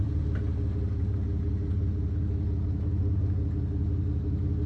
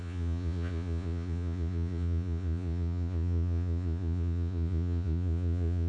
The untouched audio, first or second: first